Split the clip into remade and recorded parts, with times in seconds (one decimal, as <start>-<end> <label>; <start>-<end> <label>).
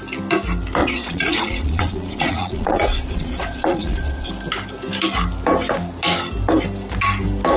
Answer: 0.0-0.8 recorded; 0.8-4.3 remade; 4.3-7.6 recorded